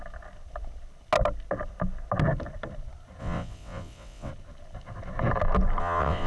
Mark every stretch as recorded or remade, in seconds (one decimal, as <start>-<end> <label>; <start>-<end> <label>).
0.0-3.2 recorded; 3.2-4.3 remade; 4.3-5.8 recorded; 5.8-6.3 remade

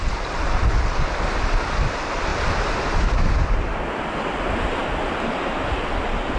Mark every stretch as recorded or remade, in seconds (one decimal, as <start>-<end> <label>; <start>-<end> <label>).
0.0-6.4 recorded

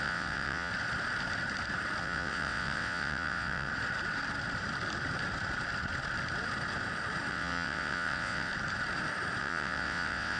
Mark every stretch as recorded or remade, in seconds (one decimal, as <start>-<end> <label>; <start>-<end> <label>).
0.0-0.7 remade; 0.7-2.0 recorded; 2.0-3.7 remade; 3.7-7.3 recorded; 7.3-8.5 remade; 8.5-9.4 recorded; 9.4-10.4 remade

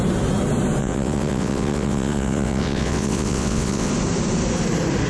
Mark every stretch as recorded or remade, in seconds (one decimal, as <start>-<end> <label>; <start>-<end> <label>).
0.0-0.8 recorded; 0.8-3.9 remade; 3.9-5.1 recorded

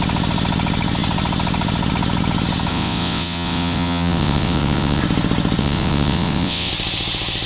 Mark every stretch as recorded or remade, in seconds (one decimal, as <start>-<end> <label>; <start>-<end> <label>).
0.0-2.7 recorded; 2.7-5.0 remade; 5.0-5.6 recorded; 5.6-6.7 remade; 6.7-7.5 recorded

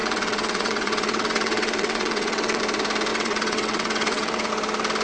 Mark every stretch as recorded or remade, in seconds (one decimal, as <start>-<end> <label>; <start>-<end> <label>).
0.0-2.6 remade; 2.6-3.1 recorded; 3.1-4.5 remade; 4.5-5.0 recorded

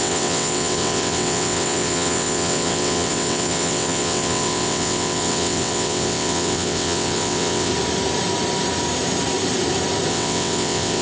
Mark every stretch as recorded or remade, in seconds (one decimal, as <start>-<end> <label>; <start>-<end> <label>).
0.0-7.7 remade; 7.7-10.1 recorded; 10.1-11.0 remade